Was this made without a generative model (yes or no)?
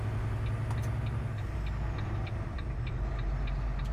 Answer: yes